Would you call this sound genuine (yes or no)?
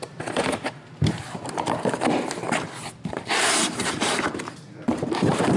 no